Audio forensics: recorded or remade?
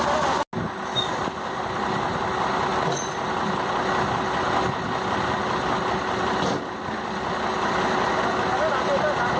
recorded